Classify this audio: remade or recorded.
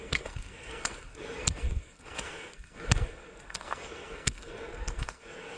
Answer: remade